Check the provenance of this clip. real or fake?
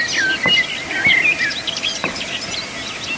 real